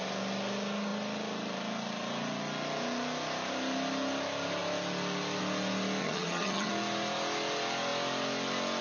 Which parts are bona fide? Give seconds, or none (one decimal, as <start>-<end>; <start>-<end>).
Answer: 0.0-6.0; 6.7-8.8